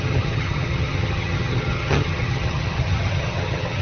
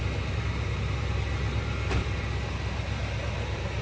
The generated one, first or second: first